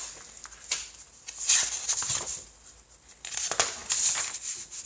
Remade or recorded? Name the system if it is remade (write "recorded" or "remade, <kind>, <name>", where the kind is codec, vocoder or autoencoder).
recorded